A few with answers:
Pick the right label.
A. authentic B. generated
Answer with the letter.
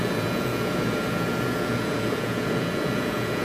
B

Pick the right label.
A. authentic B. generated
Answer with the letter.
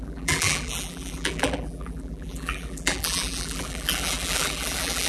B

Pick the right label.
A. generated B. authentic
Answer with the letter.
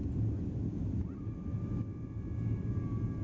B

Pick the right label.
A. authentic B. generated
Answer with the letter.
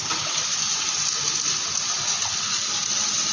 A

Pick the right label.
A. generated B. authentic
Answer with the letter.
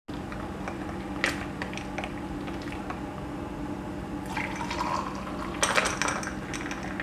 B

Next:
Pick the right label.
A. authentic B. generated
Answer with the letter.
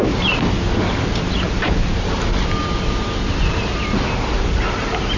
A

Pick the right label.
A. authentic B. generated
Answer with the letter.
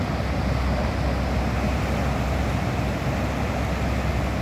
A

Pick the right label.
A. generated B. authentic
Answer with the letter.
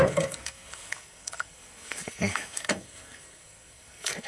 A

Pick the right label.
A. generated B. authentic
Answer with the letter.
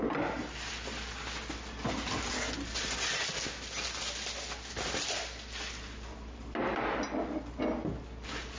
B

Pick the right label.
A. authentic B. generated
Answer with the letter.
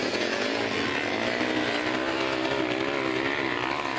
A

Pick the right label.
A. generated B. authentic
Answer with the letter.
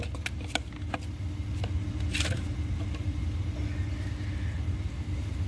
B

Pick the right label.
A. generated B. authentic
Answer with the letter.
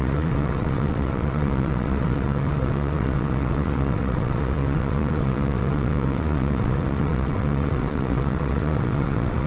A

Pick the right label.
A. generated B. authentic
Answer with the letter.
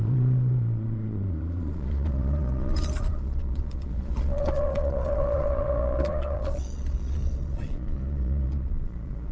A